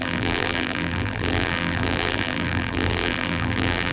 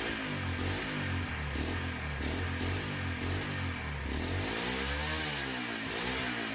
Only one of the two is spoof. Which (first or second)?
first